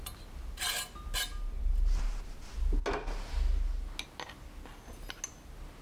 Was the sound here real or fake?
real